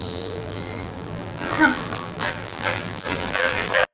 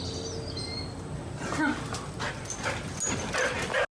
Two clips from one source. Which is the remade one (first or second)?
first